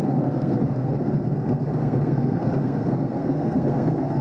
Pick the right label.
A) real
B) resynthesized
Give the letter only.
B